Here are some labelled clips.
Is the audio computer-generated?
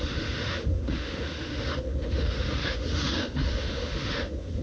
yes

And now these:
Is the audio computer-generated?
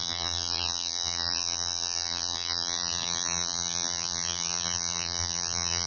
yes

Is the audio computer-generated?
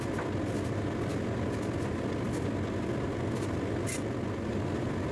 no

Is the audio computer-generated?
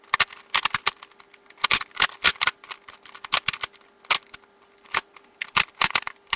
no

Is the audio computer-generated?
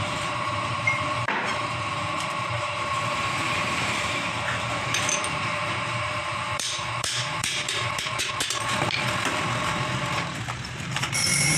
yes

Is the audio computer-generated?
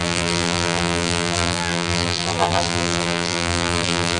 yes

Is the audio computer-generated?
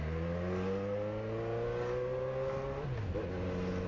no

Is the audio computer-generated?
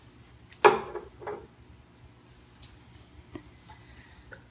no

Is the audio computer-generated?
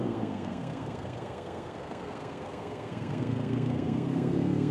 yes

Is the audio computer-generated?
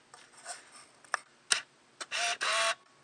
no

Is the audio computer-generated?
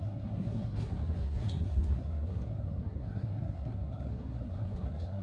yes